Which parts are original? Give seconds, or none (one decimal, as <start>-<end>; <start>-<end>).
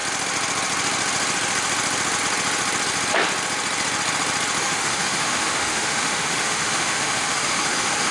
0.0-4.6